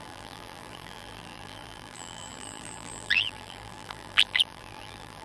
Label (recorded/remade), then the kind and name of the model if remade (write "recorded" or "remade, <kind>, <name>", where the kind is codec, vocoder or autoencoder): remade, vocoder, BigVGAN v2